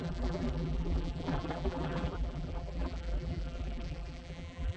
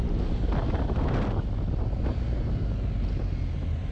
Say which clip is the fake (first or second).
first